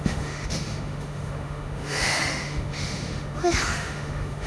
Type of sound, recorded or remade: remade